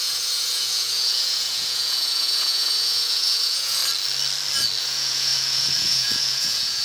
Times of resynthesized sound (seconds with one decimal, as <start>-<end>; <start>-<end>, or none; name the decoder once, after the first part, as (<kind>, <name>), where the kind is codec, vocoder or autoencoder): 0.0-3.8 (vocoder, Vocos); 4.8-6.8